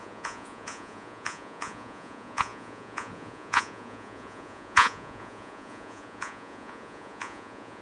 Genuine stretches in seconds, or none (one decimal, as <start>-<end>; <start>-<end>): none